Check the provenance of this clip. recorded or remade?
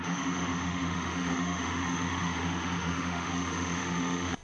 remade